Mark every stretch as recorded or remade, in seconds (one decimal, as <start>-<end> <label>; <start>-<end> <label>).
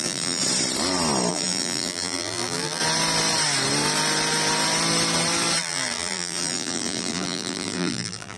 0.0-0.4 remade; 0.4-1.3 recorded; 1.3-2.8 remade; 2.8-5.6 recorded; 5.6-8.4 remade